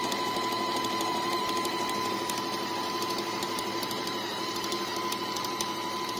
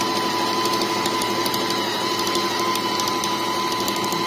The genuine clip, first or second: second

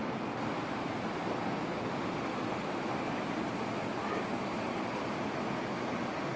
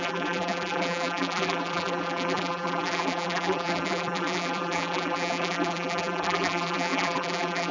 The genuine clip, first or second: first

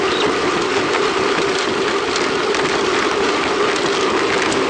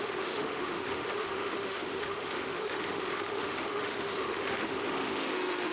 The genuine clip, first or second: first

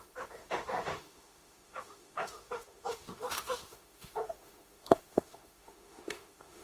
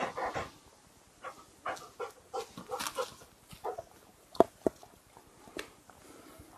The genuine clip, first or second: second